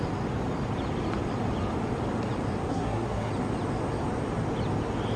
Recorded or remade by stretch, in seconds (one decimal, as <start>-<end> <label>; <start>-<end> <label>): 0.0-2.7 recorded; 2.7-3.3 remade; 3.3-5.2 recorded